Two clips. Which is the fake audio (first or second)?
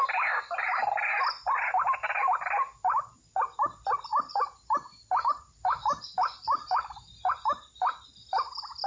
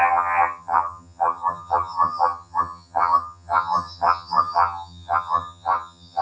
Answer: second